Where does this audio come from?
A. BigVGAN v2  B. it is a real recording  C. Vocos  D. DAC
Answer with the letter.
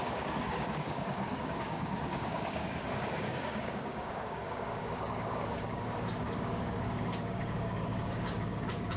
D